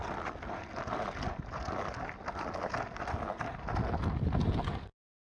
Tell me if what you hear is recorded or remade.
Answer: recorded